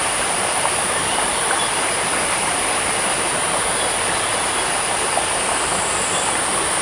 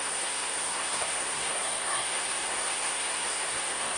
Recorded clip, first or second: first